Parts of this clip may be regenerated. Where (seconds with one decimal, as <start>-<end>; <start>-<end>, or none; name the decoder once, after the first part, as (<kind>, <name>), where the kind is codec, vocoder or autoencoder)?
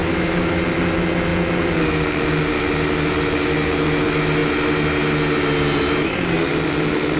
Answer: 0.0-0.6 (autoencoder, DAC-VAE)